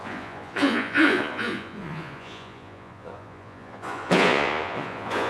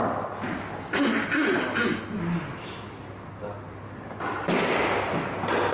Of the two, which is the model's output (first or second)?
first